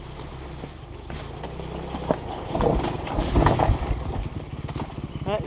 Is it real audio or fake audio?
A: real